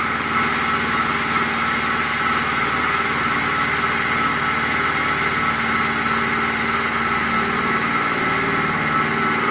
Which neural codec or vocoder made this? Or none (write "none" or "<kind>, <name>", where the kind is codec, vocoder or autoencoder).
none